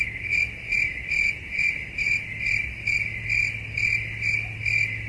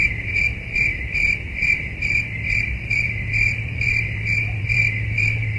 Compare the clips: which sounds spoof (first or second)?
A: second